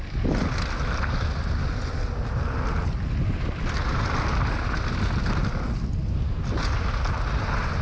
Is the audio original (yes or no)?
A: yes